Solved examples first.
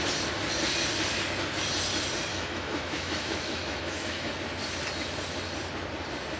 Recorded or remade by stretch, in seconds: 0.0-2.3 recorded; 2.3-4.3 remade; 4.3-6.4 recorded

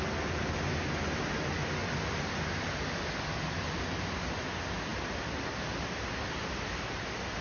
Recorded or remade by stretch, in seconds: 0.0-7.4 recorded

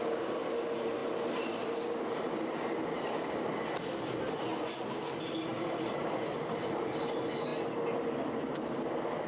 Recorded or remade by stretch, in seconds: 0.0-9.3 recorded

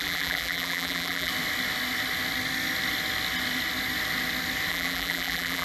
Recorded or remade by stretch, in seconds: 0.0-1.3 remade; 1.3-4.7 recorded; 4.7-5.6 remade

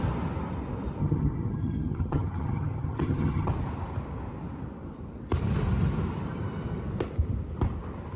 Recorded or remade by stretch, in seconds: 0.0-1.0 recorded; 1.0-3.5 remade; 3.5-8.2 recorded

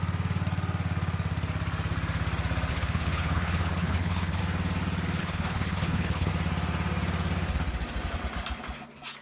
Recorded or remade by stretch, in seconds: 0.0-2.7 recorded; 2.7-4.4 remade; 4.4-5.2 recorded; 5.2-6.3 remade; 6.3-9.2 recorded